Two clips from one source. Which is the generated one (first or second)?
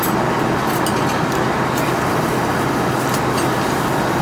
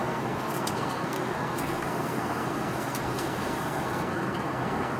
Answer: second